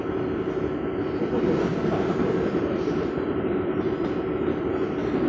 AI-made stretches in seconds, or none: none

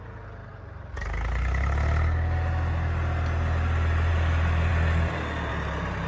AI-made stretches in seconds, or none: none

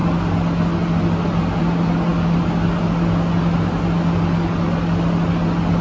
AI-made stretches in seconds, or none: none

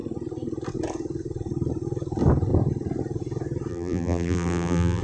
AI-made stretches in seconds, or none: 3.7-5.0